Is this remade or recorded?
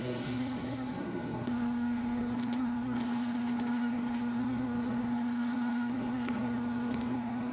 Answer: remade